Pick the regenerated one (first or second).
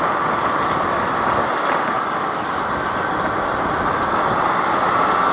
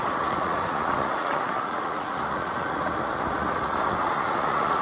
second